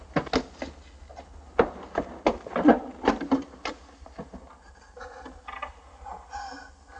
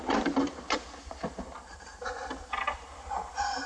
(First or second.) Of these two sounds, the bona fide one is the first